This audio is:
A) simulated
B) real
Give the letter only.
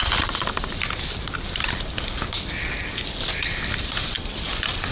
A